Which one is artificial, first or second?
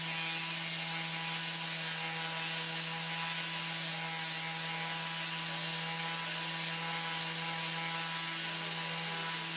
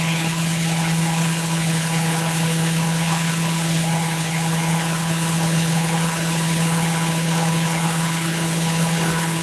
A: second